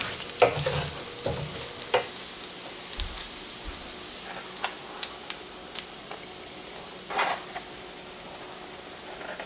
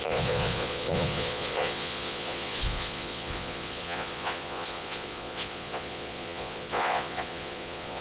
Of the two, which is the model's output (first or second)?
second